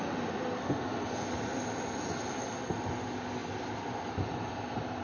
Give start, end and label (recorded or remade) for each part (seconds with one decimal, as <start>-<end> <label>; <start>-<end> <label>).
0.0-5.0 recorded